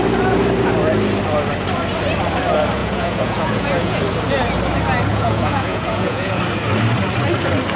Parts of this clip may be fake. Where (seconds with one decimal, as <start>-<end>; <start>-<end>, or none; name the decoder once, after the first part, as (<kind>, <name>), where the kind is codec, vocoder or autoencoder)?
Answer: 2.8-4.0 (vocoder, Vocos); 5.1-6.4

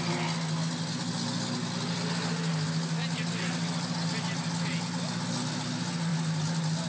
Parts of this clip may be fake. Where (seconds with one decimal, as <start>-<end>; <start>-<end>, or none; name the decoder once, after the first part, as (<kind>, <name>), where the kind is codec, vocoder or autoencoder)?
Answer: none

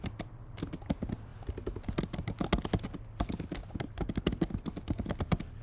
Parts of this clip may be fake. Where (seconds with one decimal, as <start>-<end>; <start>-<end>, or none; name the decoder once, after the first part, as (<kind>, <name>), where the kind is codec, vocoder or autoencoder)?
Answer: none

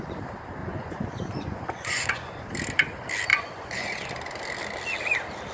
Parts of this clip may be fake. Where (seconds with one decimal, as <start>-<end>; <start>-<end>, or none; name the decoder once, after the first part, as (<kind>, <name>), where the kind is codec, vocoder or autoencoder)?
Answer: 0.6-2.4 (vocoder, Vocos); 3.3-4.1

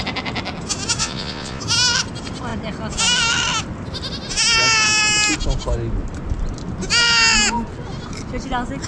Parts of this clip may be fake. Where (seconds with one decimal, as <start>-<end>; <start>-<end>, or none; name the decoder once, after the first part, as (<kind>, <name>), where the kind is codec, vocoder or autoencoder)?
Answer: 1.0-1.6 (vocoder, Vocos)